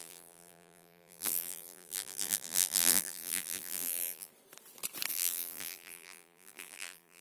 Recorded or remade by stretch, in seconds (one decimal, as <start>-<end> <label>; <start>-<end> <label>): 0.0-4.3 remade; 4.3-5.1 recorded; 5.1-7.2 remade